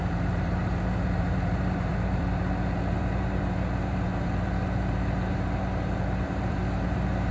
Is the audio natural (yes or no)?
no